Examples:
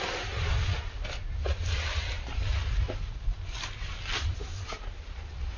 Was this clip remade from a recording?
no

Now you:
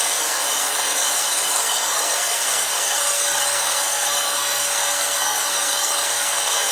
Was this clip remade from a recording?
yes